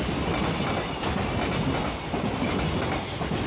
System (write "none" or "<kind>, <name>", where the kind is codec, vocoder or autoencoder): none